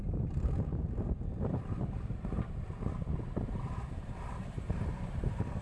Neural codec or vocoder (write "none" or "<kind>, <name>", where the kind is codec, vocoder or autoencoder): vocoder, BigVGAN v2